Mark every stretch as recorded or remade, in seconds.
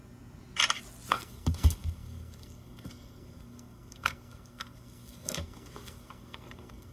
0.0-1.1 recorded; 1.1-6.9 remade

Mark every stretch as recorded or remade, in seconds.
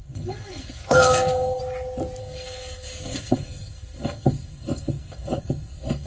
0.0-1.6 remade; 1.6-2.2 recorded; 2.2-6.1 remade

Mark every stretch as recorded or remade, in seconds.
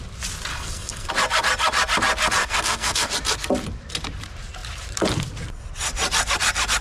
0.0-0.5 recorded; 0.5-1.1 remade; 1.1-2.4 recorded; 2.4-3.1 remade; 3.1-6.8 recorded